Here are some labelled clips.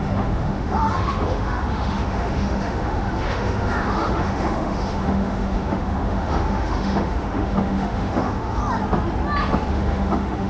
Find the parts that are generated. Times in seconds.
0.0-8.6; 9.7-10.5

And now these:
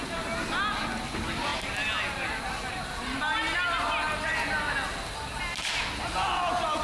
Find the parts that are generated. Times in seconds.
none

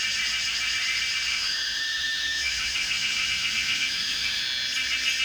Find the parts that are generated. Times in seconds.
1.3-4.4

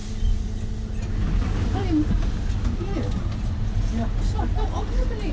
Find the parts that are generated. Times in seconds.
none

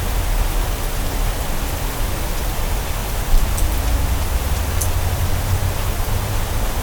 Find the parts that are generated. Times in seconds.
none

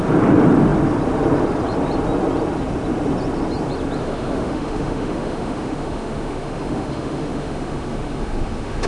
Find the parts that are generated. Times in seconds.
4.0-8.9

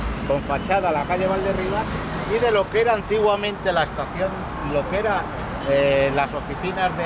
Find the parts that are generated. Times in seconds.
none